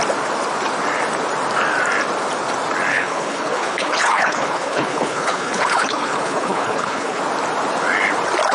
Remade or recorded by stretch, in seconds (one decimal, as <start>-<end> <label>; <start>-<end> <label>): 0.0-2.9 recorded; 2.9-7.2 remade; 7.2-8.5 recorded